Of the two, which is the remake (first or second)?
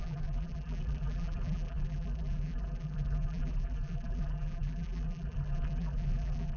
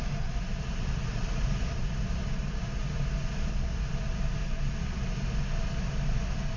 first